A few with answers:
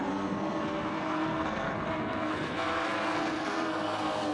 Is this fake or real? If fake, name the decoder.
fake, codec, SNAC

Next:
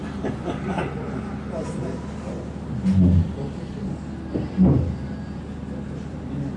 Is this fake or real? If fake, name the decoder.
real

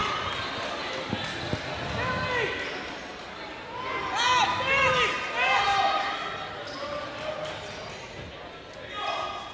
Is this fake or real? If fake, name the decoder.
real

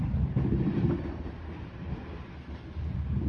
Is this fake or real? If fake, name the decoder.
real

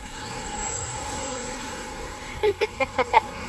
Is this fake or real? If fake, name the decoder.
fake, codec, SNAC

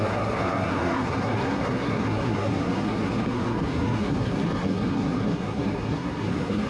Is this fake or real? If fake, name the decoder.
fake, codec, SNAC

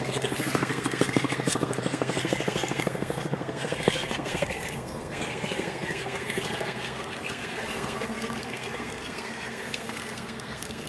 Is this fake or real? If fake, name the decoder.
fake, codec, SNAC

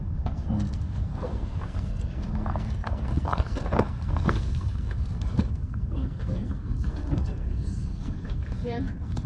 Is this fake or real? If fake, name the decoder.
fake, codec, SNAC